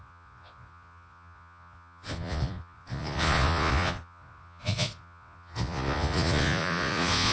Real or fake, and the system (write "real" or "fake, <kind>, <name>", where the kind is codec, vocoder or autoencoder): fake, vocoder, Vocos